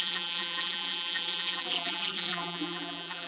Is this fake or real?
fake